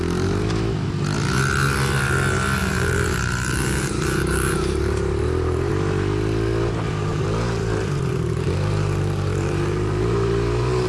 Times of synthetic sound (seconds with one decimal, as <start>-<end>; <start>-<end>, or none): 2.6-5.7; 7.1-10.9